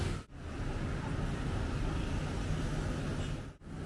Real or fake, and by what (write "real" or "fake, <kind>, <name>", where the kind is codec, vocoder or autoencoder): real